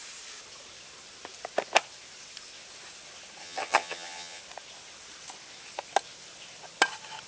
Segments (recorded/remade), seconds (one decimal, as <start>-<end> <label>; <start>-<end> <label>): 0.0-3.4 recorded; 3.4-4.4 remade; 4.4-7.3 recorded